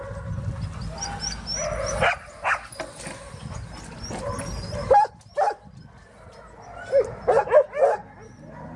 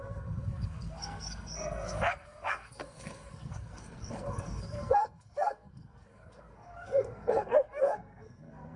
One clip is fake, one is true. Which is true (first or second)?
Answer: first